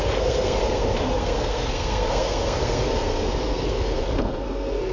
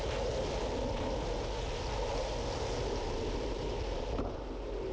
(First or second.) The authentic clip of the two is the second